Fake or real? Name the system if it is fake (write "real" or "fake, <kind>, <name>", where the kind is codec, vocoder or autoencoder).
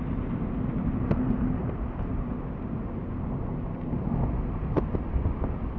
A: real